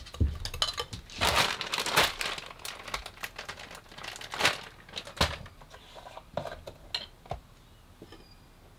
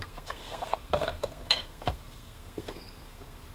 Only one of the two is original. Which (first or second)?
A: first